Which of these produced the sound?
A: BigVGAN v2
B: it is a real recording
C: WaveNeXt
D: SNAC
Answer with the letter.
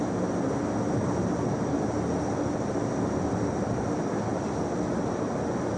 B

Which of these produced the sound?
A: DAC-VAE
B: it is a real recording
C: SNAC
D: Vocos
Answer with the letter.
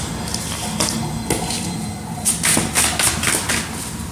B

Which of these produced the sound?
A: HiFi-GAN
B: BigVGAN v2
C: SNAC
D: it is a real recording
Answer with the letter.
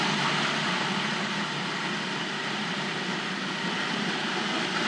D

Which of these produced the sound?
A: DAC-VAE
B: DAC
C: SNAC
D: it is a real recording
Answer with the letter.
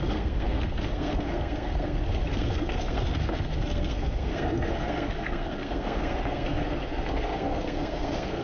C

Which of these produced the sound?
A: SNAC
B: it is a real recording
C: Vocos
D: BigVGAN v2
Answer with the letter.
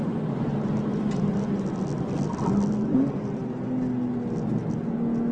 B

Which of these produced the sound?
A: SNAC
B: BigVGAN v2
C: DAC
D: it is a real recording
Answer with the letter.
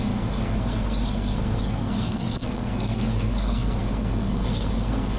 A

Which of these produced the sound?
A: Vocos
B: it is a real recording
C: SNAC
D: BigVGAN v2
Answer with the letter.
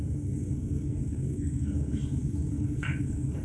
C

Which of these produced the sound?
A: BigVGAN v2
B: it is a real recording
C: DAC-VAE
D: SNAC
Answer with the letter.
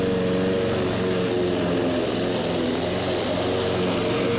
B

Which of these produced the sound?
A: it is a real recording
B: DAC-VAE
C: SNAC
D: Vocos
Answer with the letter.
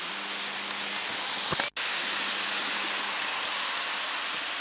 A